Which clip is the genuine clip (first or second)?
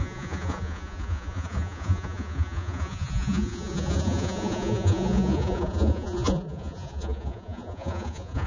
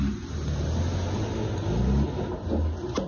second